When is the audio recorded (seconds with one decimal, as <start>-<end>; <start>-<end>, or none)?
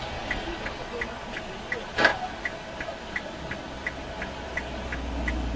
0.0-5.6